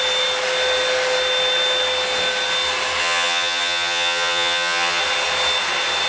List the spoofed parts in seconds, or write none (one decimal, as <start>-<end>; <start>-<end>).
3.0-5.0